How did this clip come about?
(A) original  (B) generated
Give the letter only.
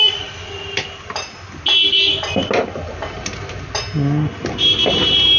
A